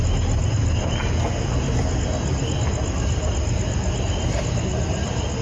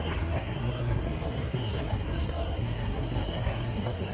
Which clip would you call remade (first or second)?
second